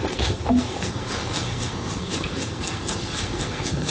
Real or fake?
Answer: fake